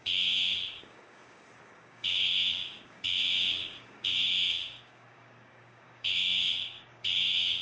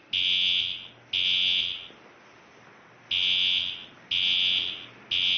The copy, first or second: first